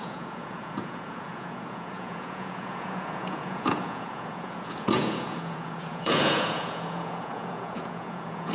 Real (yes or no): no